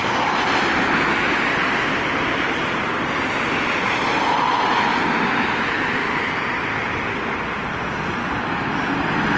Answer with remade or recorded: recorded